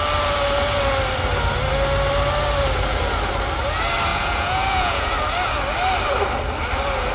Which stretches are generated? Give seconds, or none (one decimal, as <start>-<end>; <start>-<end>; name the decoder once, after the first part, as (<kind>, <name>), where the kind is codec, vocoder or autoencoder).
4.1-5.1 (vocoder, Vocos)